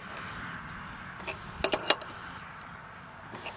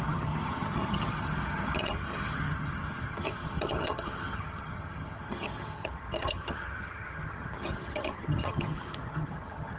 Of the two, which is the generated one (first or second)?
second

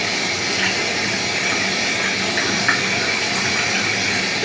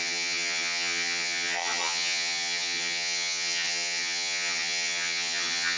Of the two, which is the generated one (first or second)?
second